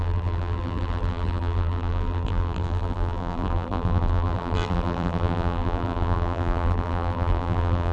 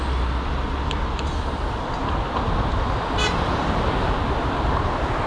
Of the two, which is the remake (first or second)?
first